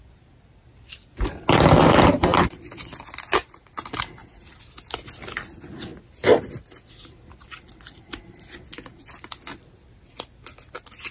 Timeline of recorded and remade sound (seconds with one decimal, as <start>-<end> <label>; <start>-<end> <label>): 0.0-11.1 recorded